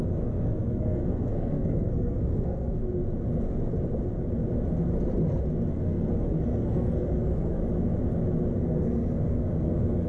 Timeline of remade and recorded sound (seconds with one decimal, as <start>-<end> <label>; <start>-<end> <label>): 0.0-2.8 remade; 2.8-5.7 recorded; 5.7-7.6 remade; 7.6-8.6 recorded; 8.6-10.1 remade